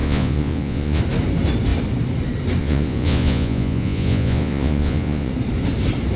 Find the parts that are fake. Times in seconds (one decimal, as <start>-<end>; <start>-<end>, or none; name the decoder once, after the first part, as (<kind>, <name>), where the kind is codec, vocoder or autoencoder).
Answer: 0.0-1.0 (vocoder, Vocos); 2.6-5.3